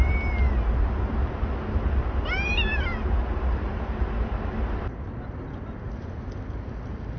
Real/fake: real